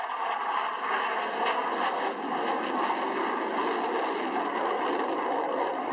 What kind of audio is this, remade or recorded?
recorded